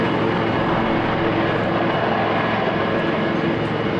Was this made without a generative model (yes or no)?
yes